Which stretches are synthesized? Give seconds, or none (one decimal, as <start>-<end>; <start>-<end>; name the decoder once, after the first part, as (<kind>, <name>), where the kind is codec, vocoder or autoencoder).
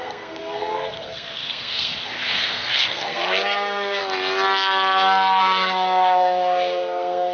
0.0-4.0 (codec, SNAC); 5.4-7.3